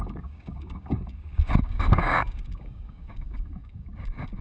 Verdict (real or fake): fake